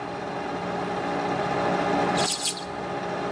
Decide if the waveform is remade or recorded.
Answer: recorded